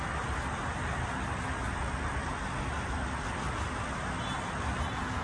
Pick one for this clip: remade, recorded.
recorded